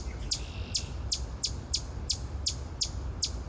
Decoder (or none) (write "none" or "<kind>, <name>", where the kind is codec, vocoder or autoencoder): none